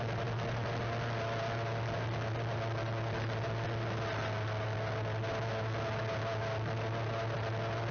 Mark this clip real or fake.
real